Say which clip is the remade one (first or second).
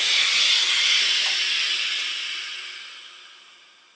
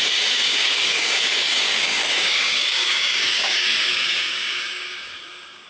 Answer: second